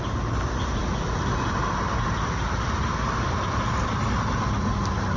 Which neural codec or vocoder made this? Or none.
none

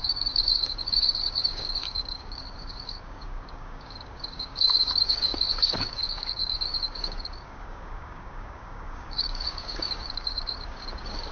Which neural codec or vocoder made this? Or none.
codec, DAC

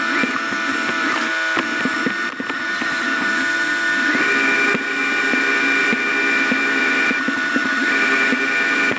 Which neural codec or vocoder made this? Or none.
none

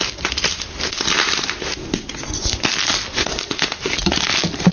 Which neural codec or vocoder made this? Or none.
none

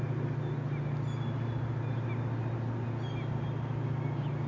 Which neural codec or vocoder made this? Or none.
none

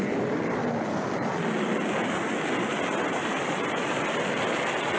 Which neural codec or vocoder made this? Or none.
none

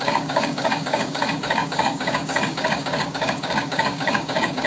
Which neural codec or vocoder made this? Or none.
codec, DAC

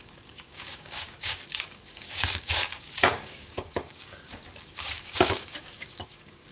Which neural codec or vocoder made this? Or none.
codec, DAC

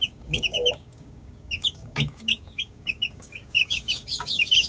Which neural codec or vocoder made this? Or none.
codec, DAC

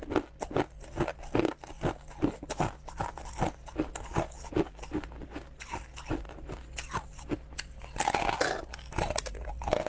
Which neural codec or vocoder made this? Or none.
none